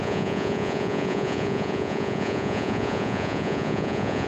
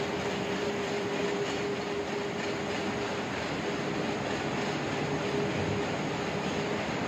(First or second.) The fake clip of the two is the first